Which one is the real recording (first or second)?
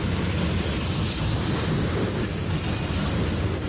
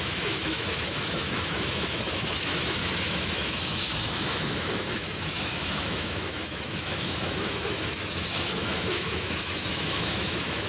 first